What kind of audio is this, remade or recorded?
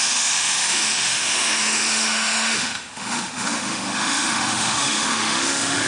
remade